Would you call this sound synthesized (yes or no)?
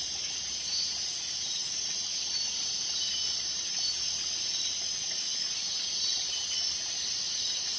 no